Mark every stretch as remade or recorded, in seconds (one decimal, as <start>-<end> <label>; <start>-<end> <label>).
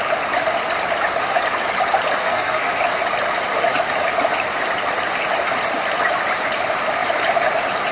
0.0-2.2 recorded; 2.2-2.7 remade; 2.7-7.9 recorded